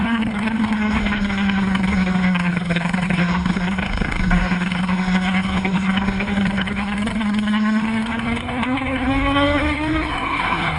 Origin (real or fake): fake